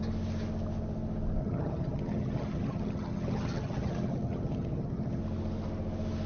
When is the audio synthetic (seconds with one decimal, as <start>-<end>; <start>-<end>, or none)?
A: 1.4-5.2